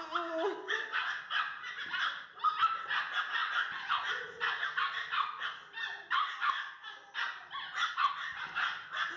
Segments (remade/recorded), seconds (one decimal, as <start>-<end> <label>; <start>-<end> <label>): 0.0-3.4 recorded; 3.4-4.1 remade; 4.1-9.2 recorded